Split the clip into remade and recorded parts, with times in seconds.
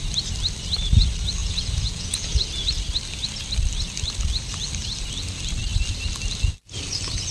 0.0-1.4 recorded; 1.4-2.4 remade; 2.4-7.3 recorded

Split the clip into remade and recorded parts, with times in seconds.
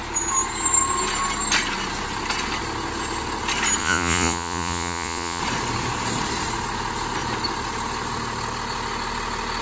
0.0-3.8 recorded; 3.8-5.4 remade; 5.4-9.6 recorded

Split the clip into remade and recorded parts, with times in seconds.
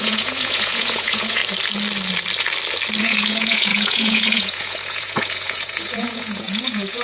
0.0-1.4 remade; 1.4-3.0 recorded; 3.0-7.0 remade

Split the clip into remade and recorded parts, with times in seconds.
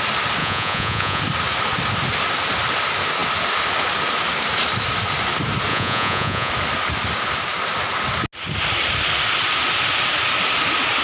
0.0-0.4 recorded; 0.4-1.2 remade; 1.2-5.7 recorded; 5.7-6.5 remade; 6.5-11.0 recorded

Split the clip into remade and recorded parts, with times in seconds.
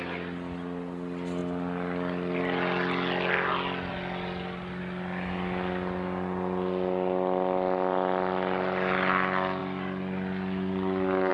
0.0-11.3 recorded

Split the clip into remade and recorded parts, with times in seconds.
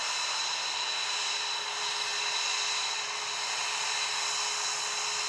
0.0-5.3 recorded